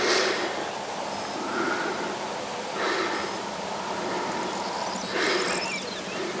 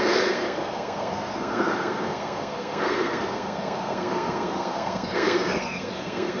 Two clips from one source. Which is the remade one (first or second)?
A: second